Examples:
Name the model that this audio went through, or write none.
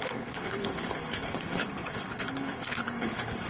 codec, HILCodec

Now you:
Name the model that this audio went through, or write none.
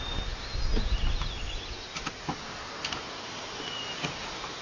none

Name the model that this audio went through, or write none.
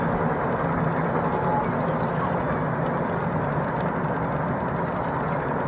none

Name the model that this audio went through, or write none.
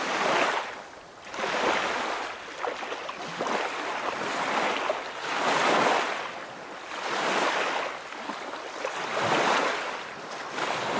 none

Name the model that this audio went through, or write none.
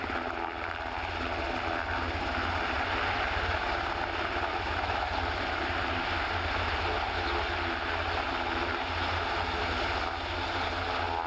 none